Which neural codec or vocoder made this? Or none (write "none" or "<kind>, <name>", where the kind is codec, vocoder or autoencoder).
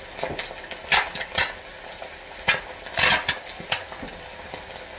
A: none